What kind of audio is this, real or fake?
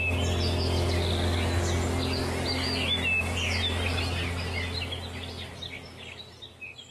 real